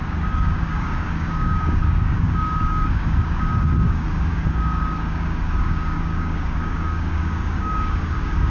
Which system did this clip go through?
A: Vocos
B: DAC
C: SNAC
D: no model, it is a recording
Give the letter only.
B